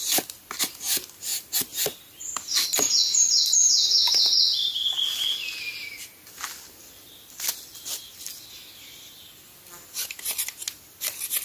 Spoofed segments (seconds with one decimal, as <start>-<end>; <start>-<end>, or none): none